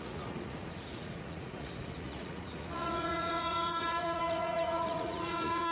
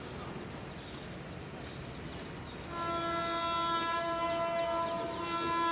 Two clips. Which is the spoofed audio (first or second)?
first